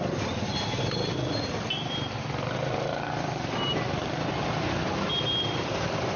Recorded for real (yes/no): yes